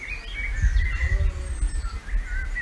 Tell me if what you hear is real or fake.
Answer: real